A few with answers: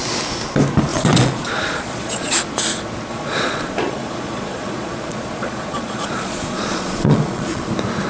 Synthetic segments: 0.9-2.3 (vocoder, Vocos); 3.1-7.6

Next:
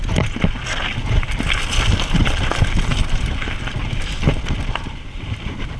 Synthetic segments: 3.0-4.3 (vocoder, BigVGAN v2); 5.1-5.8

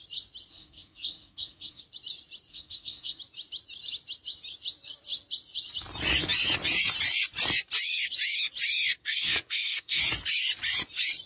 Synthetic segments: 0.5-1.8 (codec, SNAC); 2.5-3.2; 9.0-10.0

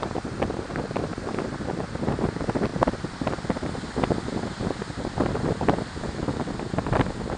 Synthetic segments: 1.1-2.3 (vocoder, BigVGAN v2)

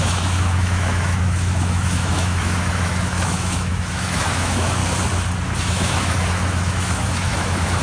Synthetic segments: 0.0-4.8 (autoencoder, DAC-VAE); 5.6-7.8

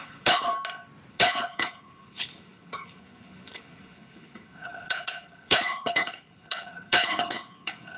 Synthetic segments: 0.0-0.5 (codec, HILCodec); 1.1-8.0

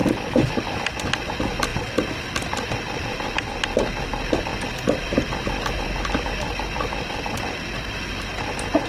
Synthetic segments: 0.0-0.8 (vocoder, BigVGAN v2); 4.5-8.0